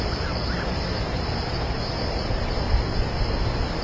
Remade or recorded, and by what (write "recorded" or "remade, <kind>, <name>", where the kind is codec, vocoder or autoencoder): recorded